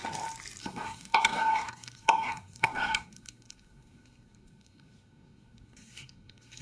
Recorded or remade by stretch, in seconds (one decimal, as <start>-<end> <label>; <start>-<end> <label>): 0.0-0.6 recorded; 0.6-6.6 remade